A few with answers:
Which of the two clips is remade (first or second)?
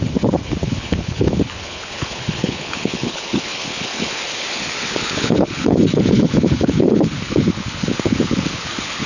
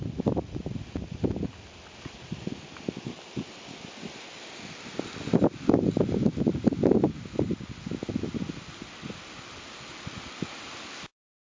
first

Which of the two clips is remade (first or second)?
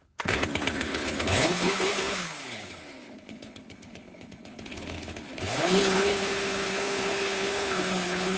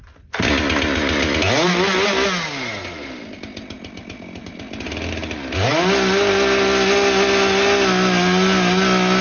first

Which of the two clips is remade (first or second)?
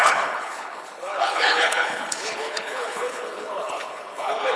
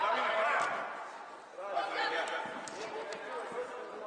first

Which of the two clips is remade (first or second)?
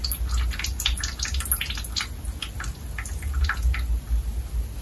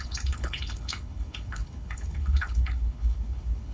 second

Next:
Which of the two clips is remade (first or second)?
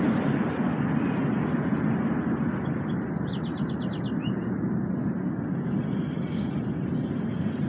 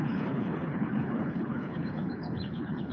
second